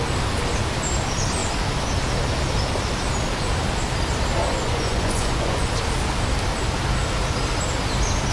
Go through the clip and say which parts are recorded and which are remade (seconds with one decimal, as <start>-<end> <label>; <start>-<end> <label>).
0.0-4.4 recorded; 4.4-5.7 remade; 5.7-8.3 recorded